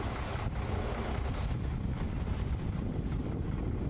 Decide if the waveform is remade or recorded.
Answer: recorded